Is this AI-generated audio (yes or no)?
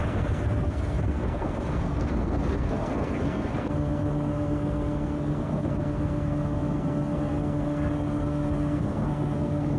yes